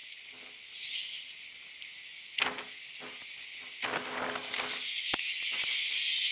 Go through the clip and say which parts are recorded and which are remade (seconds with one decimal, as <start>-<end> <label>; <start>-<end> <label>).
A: 0.0-6.3 recorded